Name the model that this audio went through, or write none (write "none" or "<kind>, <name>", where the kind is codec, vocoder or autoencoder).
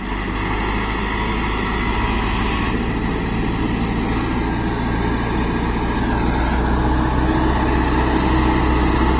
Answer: none